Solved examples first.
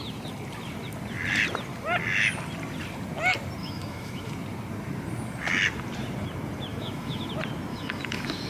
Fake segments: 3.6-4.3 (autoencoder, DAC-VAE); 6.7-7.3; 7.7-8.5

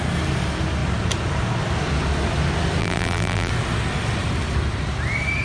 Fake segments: 2.8-3.5 (vocoder, BigVGAN v2)

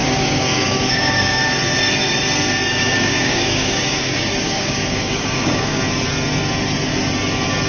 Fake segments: 0.0-1.4 (codec, DAC); 2.7-5.8